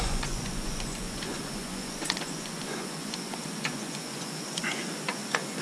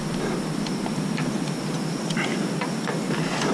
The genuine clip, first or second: second